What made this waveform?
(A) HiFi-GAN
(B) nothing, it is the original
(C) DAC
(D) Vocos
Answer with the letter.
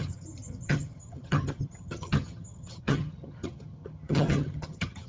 A